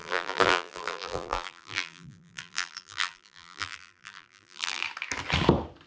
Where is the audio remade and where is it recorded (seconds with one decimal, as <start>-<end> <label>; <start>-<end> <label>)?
0.0-4.8 remade; 4.8-5.9 recorded